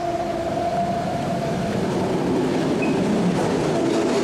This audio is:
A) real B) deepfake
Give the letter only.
A